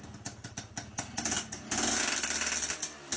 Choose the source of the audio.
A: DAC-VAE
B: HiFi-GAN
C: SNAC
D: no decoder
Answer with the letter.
D